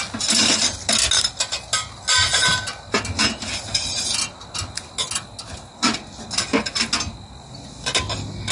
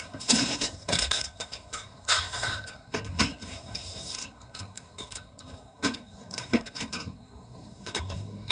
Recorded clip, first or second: first